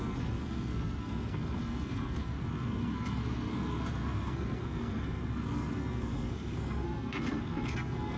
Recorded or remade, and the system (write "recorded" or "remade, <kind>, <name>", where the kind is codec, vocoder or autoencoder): remade, codec, SNAC